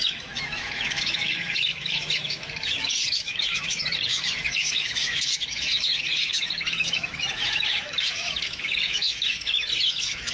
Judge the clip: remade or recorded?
remade